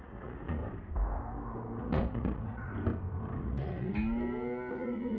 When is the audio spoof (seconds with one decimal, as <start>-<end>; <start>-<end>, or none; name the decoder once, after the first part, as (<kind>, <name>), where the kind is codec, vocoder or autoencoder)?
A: 0.0-0.6 (vocoder, Vocos); 1.8-2.7; 3.4-3.9; 4.7-5.2